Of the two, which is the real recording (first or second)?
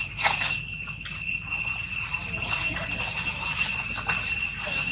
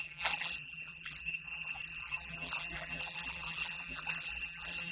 first